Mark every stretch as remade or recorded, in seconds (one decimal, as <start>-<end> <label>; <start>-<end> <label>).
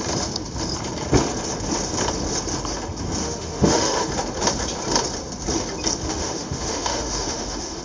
0.0-3.2 recorded; 3.2-4.1 remade; 4.1-6.1 recorded; 6.1-7.8 remade